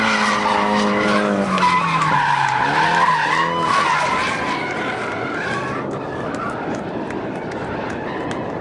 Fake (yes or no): no